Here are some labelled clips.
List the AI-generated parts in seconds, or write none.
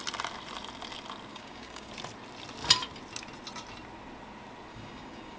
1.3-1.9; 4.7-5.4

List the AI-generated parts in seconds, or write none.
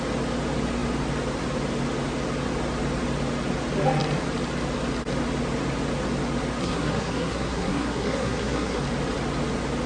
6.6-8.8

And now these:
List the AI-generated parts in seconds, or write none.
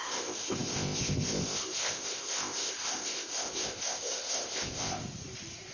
0.0-5.0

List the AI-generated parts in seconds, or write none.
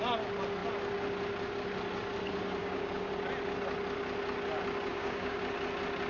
2.6-3.1; 4.9-5.4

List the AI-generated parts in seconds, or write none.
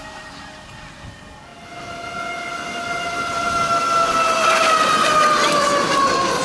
none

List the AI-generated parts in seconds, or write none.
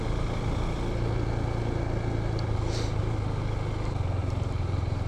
4.2-5.1